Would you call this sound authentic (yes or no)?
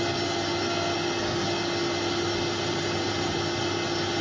yes